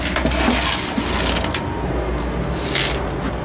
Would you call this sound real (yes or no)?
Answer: yes